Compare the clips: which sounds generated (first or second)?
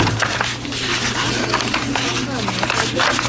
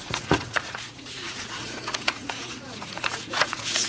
second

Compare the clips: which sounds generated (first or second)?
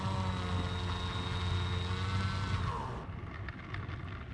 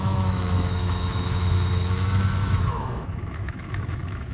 second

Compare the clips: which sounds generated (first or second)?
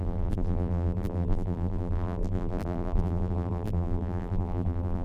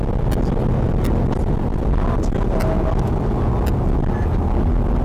first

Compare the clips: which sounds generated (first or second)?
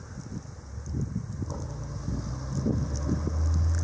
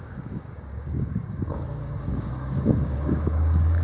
second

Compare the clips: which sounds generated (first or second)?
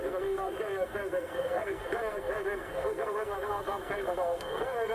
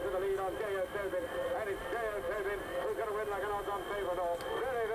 first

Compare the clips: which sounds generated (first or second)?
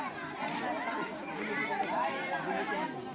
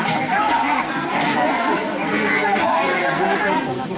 second